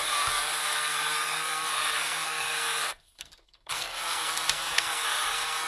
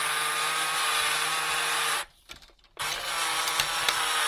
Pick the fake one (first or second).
first